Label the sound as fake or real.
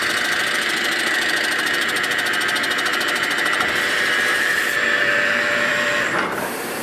fake